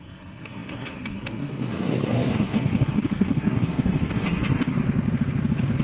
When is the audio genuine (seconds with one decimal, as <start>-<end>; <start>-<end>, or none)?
4.8-5.8